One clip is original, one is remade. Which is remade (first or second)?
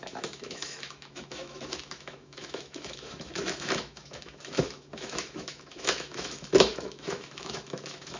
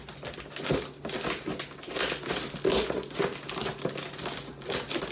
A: first